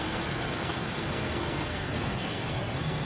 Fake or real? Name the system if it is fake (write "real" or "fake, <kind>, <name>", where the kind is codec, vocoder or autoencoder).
fake, codec, SNAC